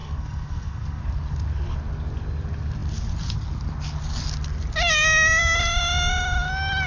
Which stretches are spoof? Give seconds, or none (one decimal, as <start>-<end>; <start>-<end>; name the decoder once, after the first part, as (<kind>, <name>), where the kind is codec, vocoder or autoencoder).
0.0-1.0 (codec, SNAC)